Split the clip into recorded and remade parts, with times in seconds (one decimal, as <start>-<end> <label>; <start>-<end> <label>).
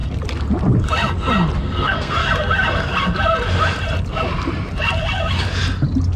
0.0-1.6 recorded; 1.6-2.2 remade; 2.2-6.2 recorded